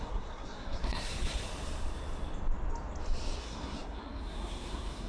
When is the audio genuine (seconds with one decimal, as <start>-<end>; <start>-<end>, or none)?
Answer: 1.4-3.4